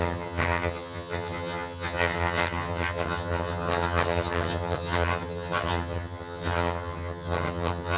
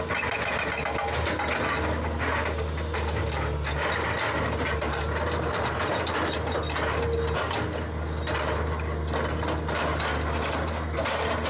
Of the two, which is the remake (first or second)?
first